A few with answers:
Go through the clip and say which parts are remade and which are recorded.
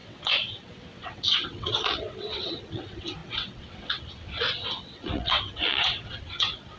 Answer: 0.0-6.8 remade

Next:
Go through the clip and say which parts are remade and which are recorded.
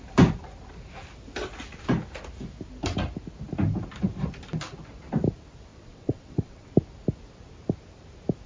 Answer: 0.0-5.7 recorded; 5.7-6.7 remade; 6.7-8.5 recorded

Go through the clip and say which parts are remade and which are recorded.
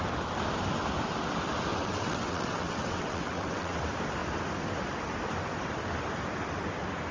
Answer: 0.0-1.7 recorded; 1.7-3.8 remade; 3.8-7.1 recorded